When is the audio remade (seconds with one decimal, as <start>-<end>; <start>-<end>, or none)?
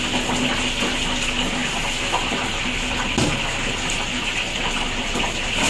none